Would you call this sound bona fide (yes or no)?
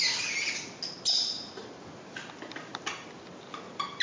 yes